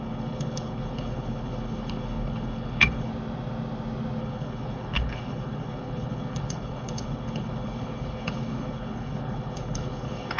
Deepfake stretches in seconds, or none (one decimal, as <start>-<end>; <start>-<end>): 0.0-3.1; 4.2-10.4